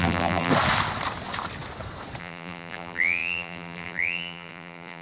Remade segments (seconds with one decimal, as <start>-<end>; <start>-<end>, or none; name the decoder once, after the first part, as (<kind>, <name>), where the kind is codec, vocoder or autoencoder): 0.0-0.5 (vocoder, BigVGAN v2); 2.2-5.0